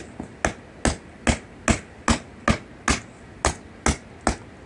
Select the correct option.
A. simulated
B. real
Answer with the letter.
B